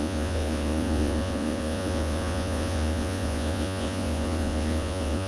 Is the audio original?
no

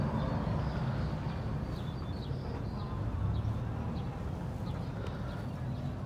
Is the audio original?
yes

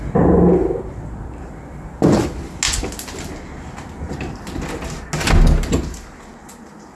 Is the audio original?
yes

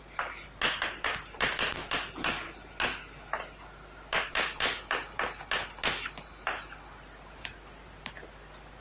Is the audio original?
yes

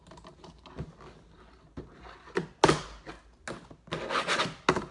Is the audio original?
yes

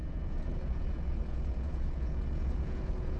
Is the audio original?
no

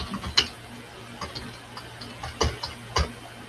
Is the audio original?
yes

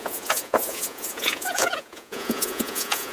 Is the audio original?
no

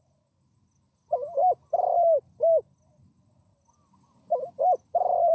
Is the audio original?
yes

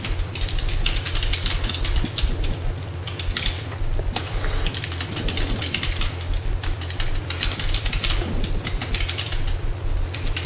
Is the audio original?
yes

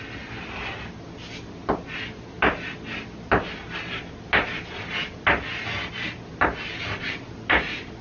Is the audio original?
yes